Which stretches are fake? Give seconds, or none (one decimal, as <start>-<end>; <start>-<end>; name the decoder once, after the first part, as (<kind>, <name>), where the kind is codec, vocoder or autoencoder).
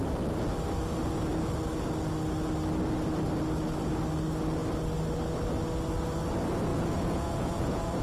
6.7-8.0 (vocoder, Vocos)